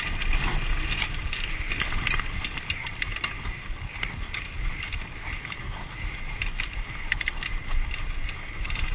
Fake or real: real